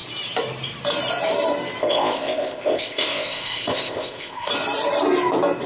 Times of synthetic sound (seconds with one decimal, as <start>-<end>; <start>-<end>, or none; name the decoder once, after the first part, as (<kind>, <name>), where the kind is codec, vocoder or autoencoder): 1.8-4.5 (codec, ZipCodec)